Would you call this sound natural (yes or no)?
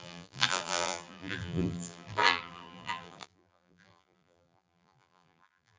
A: no